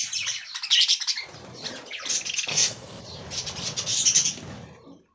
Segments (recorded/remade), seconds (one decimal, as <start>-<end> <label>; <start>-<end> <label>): 0.0-2.5 recorded; 2.5-3.0 remade; 3.0-5.1 recorded